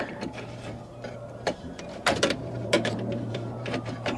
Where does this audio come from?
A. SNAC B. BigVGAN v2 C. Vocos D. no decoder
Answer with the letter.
B